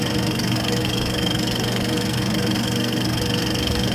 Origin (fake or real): fake